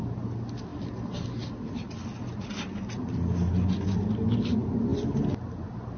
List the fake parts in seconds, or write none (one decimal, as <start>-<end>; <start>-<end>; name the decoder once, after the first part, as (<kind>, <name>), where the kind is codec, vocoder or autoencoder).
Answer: none